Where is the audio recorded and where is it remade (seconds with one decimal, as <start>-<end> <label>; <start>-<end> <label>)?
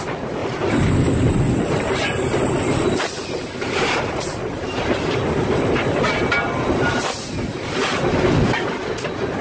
0.0-0.4 recorded; 0.4-1.9 remade; 1.9-9.4 recorded